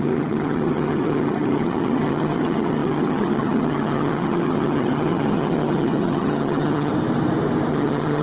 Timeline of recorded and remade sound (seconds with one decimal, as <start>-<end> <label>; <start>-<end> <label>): 0.0-6.9 remade; 6.9-7.7 recorded; 7.7-8.2 remade